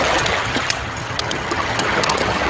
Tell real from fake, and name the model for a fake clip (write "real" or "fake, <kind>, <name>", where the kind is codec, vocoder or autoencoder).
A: fake, vocoder, HiFi-GAN